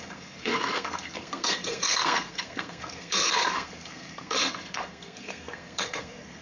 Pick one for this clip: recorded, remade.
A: remade